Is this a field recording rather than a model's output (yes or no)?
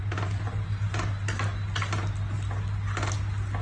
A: yes